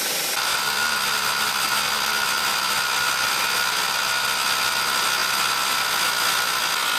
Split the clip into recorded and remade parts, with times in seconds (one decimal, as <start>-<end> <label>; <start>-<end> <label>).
0.0-7.0 recorded